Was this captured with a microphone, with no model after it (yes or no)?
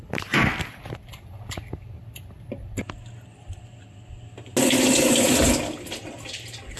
yes